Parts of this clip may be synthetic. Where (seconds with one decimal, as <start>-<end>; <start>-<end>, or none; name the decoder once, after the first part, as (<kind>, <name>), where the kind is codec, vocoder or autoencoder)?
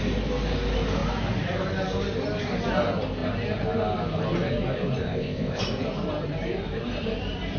5.0-5.6 (codec, ZipCodec)